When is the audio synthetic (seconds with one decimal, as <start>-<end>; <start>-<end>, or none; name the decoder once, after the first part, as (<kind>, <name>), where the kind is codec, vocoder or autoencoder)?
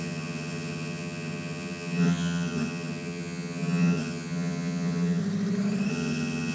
0.0-5.2 (vocoder, HiFi-GAN); 5.9-6.5